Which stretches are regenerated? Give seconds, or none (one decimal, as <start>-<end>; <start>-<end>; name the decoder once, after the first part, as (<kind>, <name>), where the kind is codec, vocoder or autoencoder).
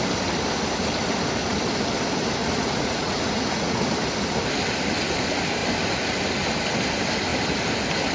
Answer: 2.4-3.9 (vocoder, Vocos)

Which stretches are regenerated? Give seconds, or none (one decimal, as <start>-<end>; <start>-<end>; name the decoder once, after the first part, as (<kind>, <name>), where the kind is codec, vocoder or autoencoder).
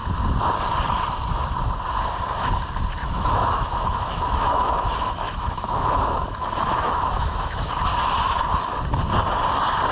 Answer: 3.0-7.7 (autoencoder, DAC-VAE)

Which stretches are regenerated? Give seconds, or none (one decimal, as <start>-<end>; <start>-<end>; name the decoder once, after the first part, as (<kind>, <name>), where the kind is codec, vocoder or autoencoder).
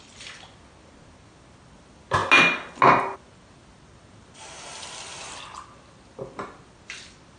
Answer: none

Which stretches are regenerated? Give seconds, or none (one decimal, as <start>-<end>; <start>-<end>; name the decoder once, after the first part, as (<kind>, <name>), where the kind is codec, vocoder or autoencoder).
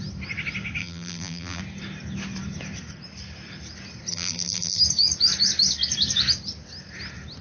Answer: 0.8-1.6 (vocoder, BigVGAN v2); 4.1-4.8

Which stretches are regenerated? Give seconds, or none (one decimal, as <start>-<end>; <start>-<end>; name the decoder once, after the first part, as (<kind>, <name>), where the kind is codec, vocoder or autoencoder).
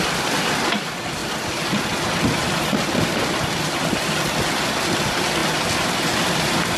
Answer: 0.0-1.2 (vocoder, BigVGAN v2); 4.7-5.4; 6.0-6.8